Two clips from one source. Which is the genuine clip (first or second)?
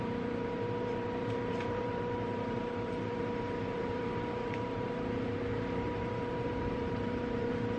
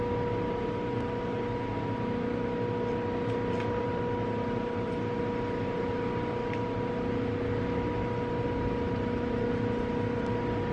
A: second